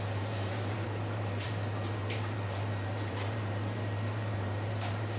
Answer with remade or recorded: remade